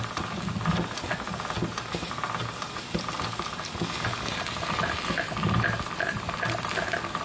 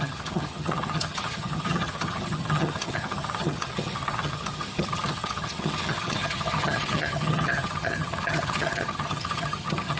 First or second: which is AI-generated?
second